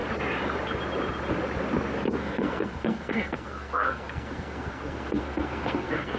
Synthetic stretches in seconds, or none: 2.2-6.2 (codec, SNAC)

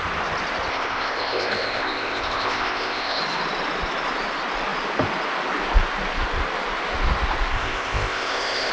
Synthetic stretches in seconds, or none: 0.7-3.2 (codec, ZipCodec); 7.5-8.7

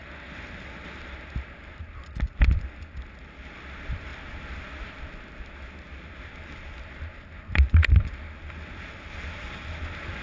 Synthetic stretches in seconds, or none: none

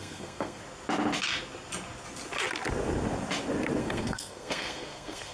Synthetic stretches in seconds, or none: 0.0-0.6 (codec, SNAC); 3.8-5.3

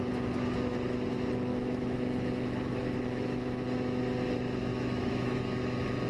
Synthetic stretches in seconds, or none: 1.5-4.0 (autoencoder, DAC-VAE); 4.7-5.6